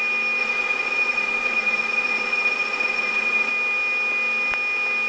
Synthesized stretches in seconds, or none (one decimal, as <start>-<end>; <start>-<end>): 0.4-3.5